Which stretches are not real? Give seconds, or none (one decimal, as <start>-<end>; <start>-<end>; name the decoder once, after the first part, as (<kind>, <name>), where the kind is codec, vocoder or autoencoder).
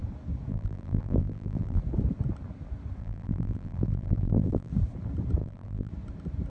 0.5-1.8 (vocoder, BigVGAN v2); 3.0-4.7; 5.4-5.9